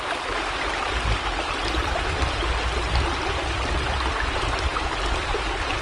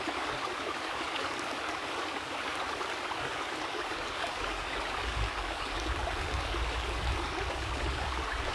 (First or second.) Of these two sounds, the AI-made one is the second